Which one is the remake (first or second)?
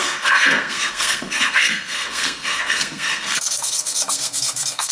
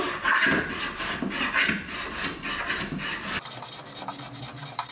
first